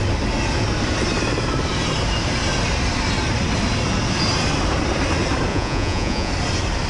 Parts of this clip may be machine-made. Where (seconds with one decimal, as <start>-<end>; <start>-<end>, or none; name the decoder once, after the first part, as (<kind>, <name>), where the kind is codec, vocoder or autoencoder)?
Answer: 5.5-6.3 (vocoder, Vocos)

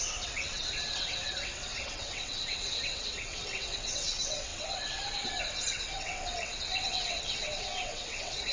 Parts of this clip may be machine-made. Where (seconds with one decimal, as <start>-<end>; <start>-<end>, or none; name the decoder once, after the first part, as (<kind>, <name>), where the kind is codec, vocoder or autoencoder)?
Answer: 0.0-8.5 (vocoder, WaveNeXt)

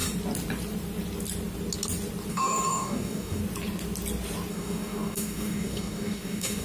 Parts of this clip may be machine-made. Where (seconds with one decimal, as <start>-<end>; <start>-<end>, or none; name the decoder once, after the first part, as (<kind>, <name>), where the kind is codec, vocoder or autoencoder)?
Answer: 2.3-3.4 (codec, DAC); 4.5-6.6

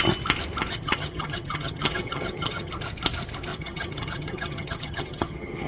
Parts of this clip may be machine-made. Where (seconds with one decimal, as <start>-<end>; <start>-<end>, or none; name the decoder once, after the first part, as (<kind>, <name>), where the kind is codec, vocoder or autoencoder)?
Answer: 0.7-2.7 (vocoder, HiFi-GAN); 3.5-5.7